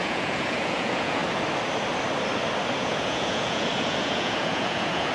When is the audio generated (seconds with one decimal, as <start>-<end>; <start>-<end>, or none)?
0.0-1.2; 2.8-5.1